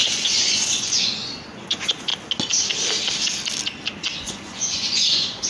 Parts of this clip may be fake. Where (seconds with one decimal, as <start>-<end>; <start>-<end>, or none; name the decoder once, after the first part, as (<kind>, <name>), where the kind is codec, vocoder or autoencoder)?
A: 0.0-2.1 (vocoder, Vocos); 4.2-5.5